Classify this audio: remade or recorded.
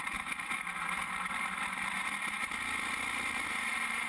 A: recorded